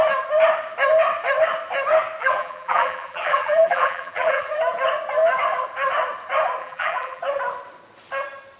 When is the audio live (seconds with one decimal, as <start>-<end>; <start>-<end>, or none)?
0.0-2.2; 4.5-6.6; 7.2-8.6